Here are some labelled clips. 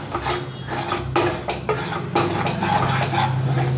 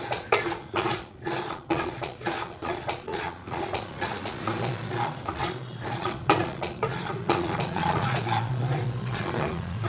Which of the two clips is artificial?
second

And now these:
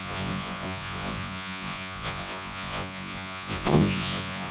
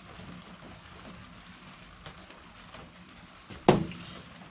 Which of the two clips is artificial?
first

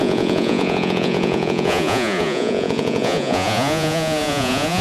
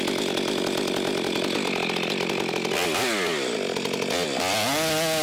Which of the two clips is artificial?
first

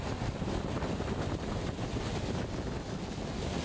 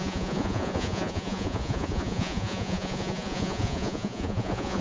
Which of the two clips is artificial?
second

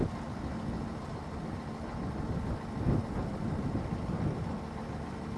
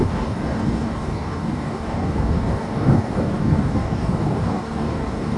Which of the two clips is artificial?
second